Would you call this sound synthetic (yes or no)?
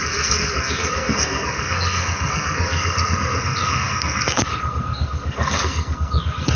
yes